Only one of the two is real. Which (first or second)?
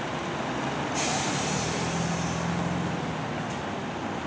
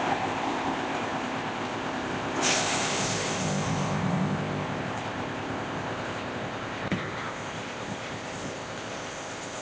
first